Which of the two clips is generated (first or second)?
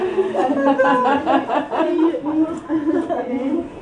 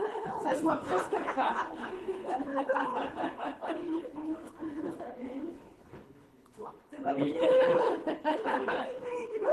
second